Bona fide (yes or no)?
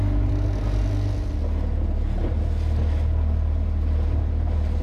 yes